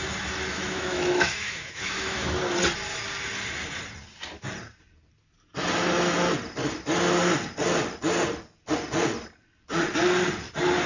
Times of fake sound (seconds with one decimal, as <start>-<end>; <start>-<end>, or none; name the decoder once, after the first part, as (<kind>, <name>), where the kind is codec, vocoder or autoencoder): 0.5-2.4 (autoencoder, DAC-VAE)